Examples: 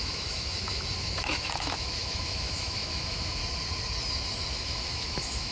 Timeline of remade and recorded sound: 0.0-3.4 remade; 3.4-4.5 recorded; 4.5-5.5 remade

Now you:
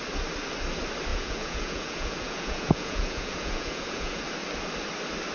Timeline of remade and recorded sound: 0.0-1.1 recorded; 1.1-4.2 remade; 4.2-5.3 recorded